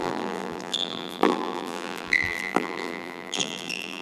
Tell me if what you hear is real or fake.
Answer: fake